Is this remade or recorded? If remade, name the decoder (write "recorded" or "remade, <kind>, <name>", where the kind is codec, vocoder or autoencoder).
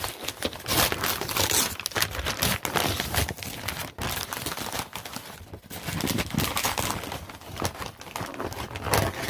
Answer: recorded